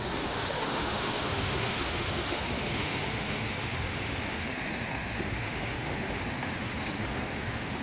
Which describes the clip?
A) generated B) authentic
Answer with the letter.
A